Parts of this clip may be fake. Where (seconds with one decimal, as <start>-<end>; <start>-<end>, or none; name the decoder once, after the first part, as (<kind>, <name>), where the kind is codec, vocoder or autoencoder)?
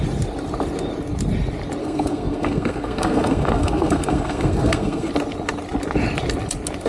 1.8-5.1 (codec, SNAC)